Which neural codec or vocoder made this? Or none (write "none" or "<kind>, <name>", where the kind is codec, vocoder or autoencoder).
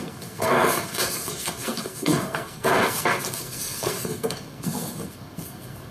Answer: codec, SNAC